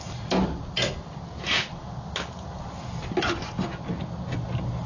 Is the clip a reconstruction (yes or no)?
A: no